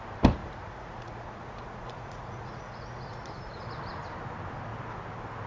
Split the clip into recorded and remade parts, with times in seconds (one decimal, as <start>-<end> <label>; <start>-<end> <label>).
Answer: 0.0-0.4 recorded; 0.4-3.7 remade; 3.7-5.5 recorded